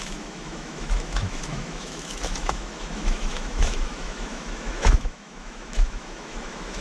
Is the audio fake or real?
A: fake